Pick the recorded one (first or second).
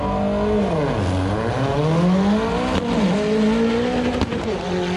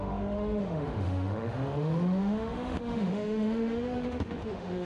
first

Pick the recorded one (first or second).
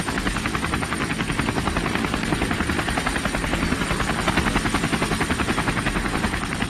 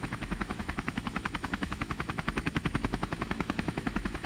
first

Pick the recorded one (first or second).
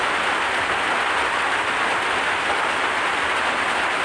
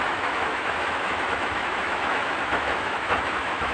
first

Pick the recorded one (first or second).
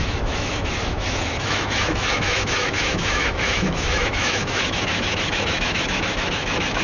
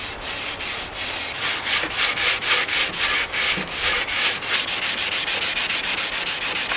second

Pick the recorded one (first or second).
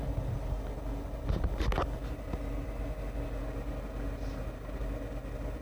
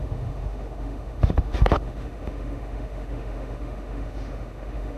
first